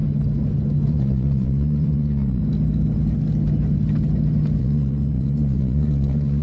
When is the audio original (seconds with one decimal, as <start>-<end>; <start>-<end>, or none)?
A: 0.0-0.9; 2.4-4.6